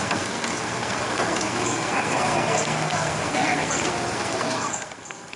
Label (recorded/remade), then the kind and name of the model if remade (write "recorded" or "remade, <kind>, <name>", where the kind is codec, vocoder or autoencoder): remade, codec, SNAC